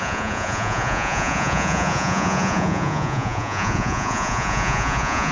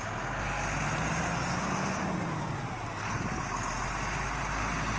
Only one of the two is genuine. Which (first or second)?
second